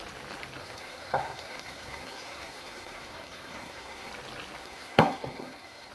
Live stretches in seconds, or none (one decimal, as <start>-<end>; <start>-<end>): 0.0-0.6; 4.1-4.6